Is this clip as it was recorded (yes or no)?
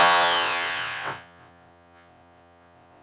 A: no